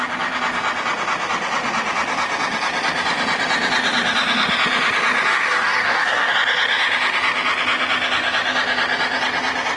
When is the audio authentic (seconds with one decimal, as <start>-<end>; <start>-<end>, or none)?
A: 0.0-5.3; 6.3-9.8